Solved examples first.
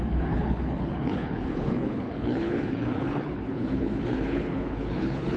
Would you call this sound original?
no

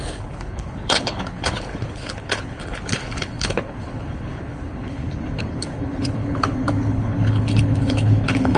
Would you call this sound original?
no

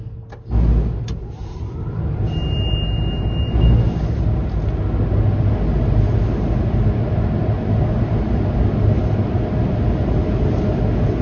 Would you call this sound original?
yes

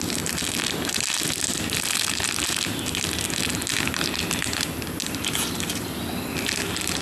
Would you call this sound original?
yes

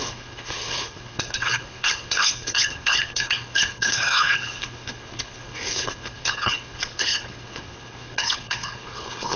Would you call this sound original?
no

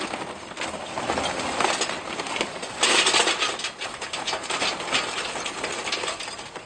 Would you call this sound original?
yes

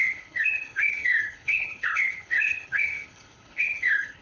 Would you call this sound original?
no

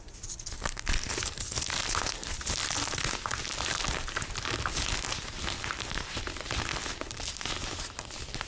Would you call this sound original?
yes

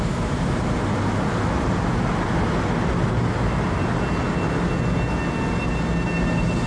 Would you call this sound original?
yes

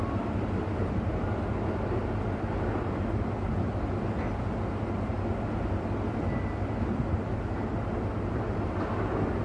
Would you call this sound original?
yes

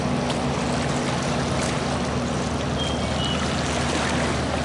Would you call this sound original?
yes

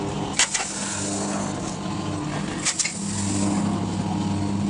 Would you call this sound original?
yes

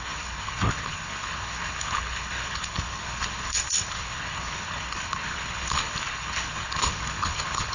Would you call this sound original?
no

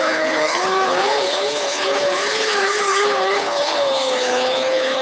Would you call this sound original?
no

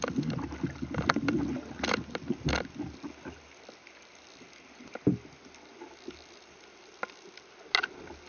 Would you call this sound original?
yes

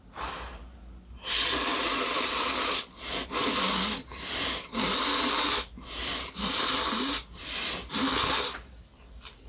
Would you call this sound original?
yes